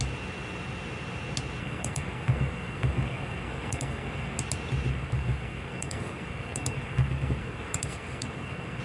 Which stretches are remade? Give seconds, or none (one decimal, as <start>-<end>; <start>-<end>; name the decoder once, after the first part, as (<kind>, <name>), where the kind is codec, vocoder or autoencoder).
1.6-4.4 (codec, SNAC); 4.9-8.8

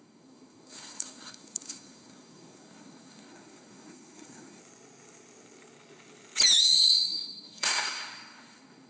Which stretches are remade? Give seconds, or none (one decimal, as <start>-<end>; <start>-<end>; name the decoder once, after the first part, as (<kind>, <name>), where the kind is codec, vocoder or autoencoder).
0.0-4.6 (codec, SNAC); 6.6-8.9

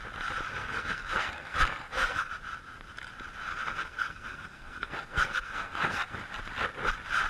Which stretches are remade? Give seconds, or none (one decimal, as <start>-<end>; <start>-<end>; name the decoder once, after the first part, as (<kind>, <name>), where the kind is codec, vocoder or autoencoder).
0.6-2.3 (codec, SNAC); 3.5-6.2

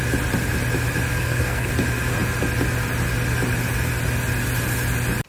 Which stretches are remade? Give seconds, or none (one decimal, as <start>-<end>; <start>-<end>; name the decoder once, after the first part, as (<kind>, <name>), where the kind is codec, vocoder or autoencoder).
1.1-1.7 (codec, SNAC)

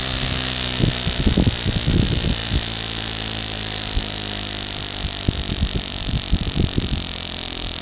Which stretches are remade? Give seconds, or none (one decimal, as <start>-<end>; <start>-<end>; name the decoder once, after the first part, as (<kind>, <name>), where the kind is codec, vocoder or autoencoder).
none

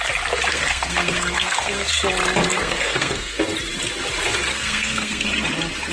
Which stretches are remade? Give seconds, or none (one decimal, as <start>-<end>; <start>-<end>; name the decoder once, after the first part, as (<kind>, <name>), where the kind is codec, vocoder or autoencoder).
0.5-2.0 (codec, SNAC); 2.6-3.4; 4.5-5.3

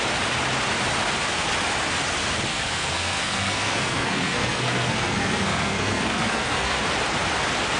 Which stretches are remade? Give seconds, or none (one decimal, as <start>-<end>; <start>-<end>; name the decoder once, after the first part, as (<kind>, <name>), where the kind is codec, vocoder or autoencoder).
2.5-6.8 (codec, SNAC)